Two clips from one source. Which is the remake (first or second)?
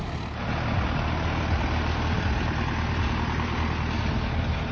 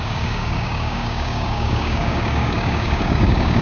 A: second